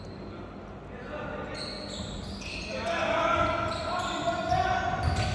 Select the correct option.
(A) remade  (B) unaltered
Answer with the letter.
B